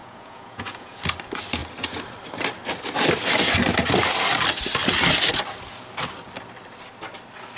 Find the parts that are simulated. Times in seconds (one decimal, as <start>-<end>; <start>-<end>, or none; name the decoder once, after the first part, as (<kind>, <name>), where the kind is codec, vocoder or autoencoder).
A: 0.0-1.0 (vocoder, Vocos)